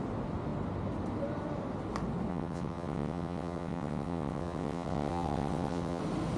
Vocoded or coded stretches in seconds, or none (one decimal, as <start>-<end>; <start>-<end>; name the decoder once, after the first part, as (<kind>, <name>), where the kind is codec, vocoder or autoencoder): 2.3-6.0 (vocoder, WaveNeXt)